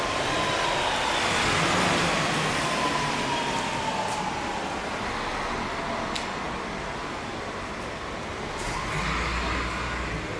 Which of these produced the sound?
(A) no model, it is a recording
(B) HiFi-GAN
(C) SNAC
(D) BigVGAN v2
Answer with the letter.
A